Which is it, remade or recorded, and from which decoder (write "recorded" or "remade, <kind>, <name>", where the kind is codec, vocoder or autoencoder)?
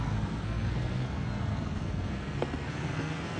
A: remade, codec, SNAC